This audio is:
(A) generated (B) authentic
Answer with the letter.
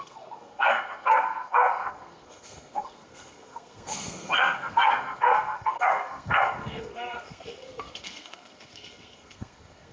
A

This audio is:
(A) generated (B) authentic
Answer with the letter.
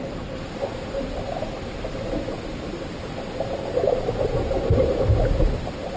B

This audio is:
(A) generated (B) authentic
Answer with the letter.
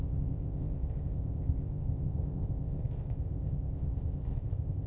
A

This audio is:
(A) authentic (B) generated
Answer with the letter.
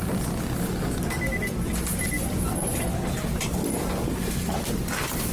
A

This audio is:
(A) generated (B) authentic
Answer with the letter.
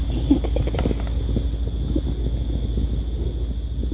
B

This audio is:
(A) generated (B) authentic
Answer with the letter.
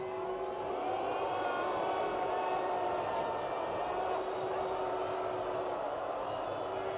B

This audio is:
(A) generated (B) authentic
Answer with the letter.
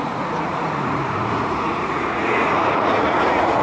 A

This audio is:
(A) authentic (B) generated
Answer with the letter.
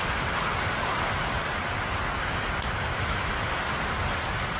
A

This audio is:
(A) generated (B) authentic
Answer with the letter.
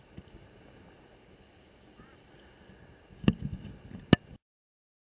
B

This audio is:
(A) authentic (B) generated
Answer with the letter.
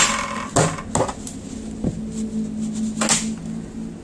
A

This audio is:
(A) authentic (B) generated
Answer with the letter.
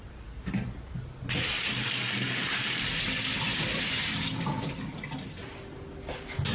A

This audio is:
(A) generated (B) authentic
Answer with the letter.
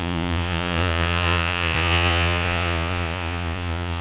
A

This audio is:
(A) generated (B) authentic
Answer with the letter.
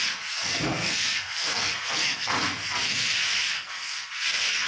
A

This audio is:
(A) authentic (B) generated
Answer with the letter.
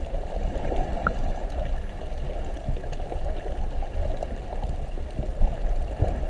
A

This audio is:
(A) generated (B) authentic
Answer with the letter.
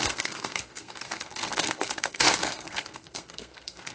A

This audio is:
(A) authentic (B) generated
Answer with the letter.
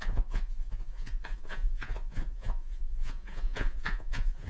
B